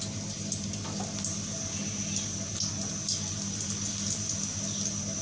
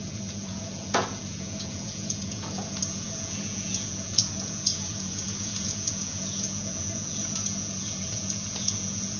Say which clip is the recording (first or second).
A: first